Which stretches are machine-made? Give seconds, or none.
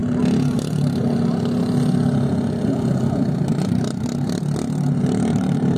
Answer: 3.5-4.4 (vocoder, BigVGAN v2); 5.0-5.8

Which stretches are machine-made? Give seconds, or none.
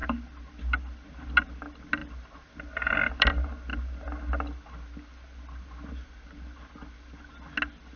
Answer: none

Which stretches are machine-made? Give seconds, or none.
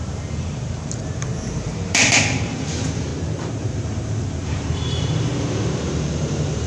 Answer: 0.0-3.1 (vocoder, BigVGAN v2); 3.6-6.7